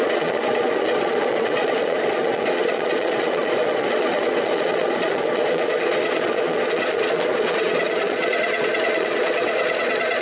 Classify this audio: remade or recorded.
remade